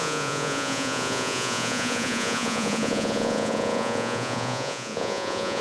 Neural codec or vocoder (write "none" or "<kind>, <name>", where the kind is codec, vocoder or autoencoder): vocoder, Vocos